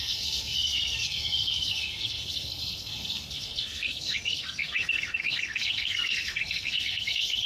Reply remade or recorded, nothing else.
remade